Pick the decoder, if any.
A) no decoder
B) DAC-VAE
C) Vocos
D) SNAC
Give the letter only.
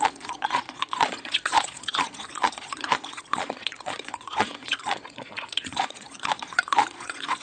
C